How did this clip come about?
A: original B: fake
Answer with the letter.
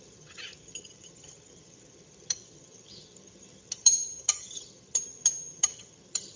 B